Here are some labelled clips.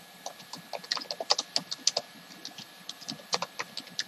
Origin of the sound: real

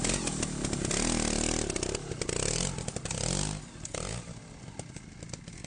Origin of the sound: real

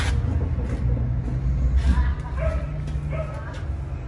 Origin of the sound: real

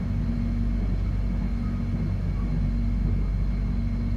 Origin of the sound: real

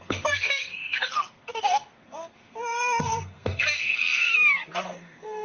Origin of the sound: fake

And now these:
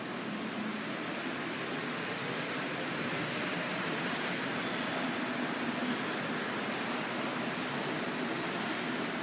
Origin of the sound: real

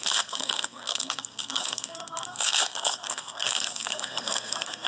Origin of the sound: fake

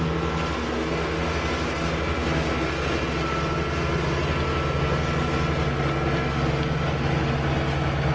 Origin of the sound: real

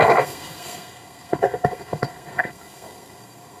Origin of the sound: fake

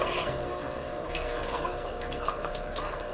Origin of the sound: fake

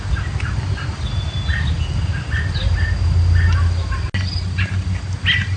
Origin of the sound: real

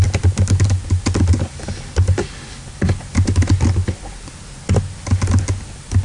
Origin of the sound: real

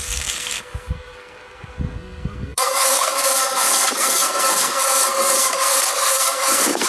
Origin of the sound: fake